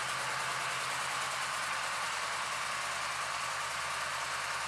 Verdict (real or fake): real